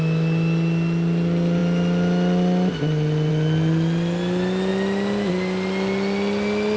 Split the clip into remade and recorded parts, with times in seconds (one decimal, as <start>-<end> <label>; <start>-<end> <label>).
0.0-6.8 recorded